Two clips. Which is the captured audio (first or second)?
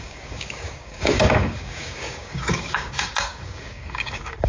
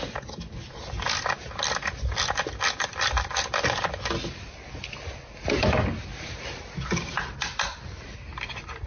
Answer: second